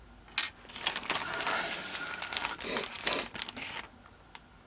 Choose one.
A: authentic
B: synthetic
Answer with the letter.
A